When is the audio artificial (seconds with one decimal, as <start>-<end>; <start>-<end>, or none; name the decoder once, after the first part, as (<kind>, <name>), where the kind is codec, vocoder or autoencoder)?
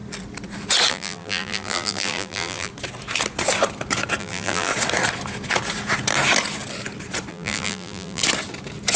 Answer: 0.9-2.7 (vocoder, BigVGAN v2); 4.2-4.7; 7.3-8.2